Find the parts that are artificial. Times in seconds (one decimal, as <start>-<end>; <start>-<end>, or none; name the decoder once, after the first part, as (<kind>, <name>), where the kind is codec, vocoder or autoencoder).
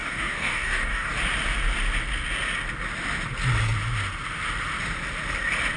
0.0-1.1 (codec, DAC)